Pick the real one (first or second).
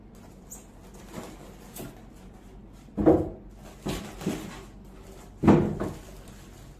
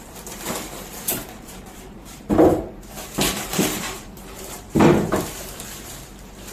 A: first